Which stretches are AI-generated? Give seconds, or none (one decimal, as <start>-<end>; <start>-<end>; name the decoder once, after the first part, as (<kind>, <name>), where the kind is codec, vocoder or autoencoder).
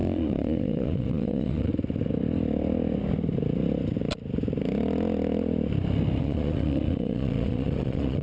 0.0-1.7 (vocoder, Vocos); 6.2-8.2